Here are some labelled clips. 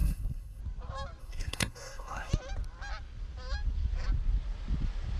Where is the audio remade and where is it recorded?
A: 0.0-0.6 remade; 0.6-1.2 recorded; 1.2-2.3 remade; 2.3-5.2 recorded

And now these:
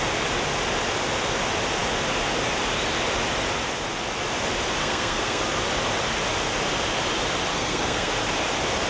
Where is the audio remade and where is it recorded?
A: 0.0-4.8 recorded; 4.8-5.4 remade; 5.4-7.5 recorded; 7.5-8.1 remade; 8.1-8.9 recorded